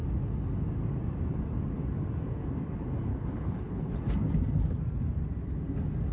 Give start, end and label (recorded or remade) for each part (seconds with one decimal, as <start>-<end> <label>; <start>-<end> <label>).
0.0-3.1 recorded; 3.1-4.0 remade; 4.0-6.1 recorded